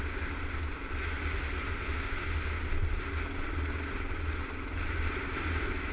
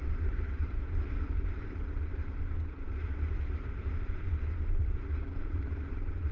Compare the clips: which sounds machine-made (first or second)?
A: second